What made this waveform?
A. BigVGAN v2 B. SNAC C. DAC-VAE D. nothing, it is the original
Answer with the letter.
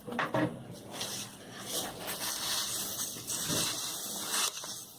D